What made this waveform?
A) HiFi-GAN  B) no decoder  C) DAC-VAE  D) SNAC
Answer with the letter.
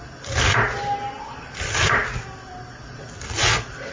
B